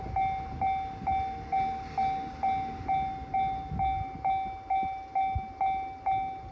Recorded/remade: recorded